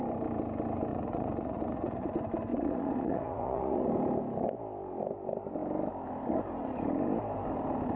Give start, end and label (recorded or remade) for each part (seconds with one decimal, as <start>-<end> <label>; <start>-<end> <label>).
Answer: 0.0-0.9 recorded; 0.9-2.1 remade; 2.1-2.5 recorded; 2.5-3.9 remade; 3.9-8.0 recorded

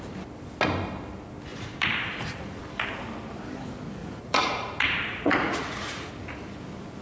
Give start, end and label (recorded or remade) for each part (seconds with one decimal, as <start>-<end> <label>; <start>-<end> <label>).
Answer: 0.0-1.5 recorded; 1.5-2.6 remade; 2.6-4.0 recorded; 4.0-6.1 remade; 6.1-7.0 recorded

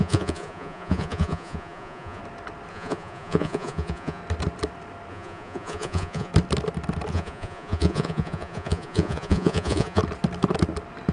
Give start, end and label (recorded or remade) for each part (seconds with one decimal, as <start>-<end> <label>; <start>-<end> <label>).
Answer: 0.0-2.2 remade; 2.2-2.7 recorded; 2.7-4.2 remade; 4.2-5.1 recorded; 5.1-6.3 remade; 6.3-7.1 recorded; 7.1-10.0 remade; 10.0-11.1 recorded

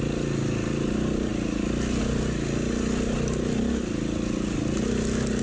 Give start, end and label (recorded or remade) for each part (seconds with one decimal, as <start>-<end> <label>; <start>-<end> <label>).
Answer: 0.0-5.4 recorded

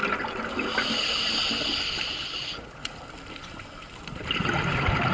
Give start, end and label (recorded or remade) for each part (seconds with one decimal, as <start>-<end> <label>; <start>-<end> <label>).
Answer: 0.0-2.4 recorded; 2.4-3.0 remade; 3.0-5.1 recorded

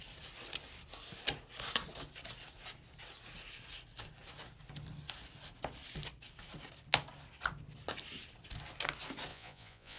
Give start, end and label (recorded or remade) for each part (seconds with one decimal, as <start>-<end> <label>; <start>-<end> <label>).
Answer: 0.0-9.3 recorded; 9.3-10.0 remade